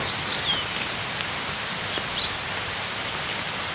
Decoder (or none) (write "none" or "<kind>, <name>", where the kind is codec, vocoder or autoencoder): none